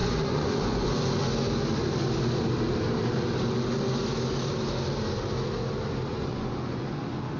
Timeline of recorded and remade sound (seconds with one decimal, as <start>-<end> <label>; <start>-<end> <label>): 0.0-0.9 remade; 0.9-6.1 recorded; 6.1-7.0 remade; 7.0-7.4 recorded